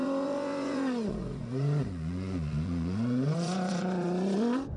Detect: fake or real fake